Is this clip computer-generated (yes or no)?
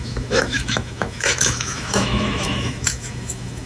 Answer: yes